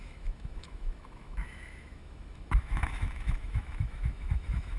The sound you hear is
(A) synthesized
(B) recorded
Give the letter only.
A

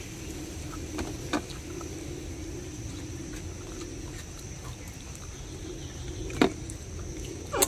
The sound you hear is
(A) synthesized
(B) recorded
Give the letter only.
B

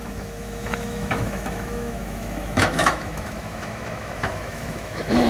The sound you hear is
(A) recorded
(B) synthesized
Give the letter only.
B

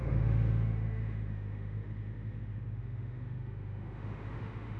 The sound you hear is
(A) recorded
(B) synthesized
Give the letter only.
B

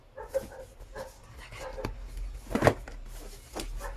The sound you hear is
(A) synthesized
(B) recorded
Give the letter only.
B